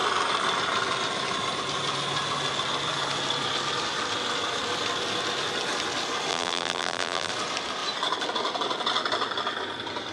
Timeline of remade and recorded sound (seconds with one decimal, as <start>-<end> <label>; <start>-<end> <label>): 0.0-6.3 recorded; 6.3-7.3 remade; 7.3-10.1 recorded